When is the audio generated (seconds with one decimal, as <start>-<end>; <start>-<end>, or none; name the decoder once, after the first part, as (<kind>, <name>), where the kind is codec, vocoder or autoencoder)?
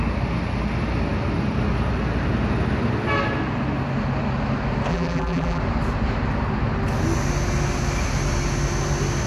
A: 4.9-5.6 (vocoder, BigVGAN v2)